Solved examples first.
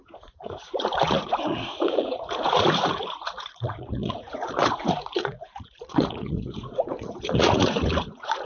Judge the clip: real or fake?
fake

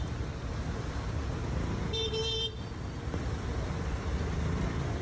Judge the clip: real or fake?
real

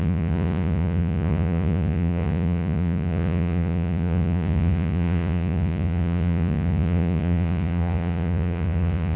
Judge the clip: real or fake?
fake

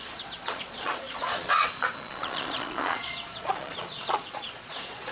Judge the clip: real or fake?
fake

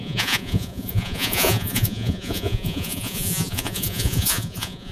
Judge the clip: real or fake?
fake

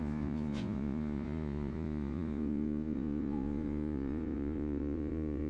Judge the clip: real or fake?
fake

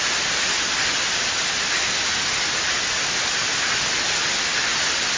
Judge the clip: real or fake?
real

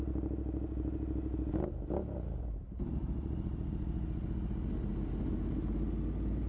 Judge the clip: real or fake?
real